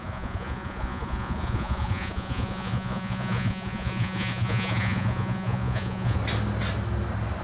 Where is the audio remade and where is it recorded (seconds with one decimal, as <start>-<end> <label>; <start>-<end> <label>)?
0.0-6.2 remade; 6.2-7.4 recorded